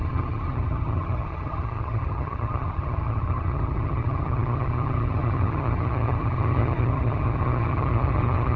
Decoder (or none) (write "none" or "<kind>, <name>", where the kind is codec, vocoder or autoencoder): vocoder, HiFi-GAN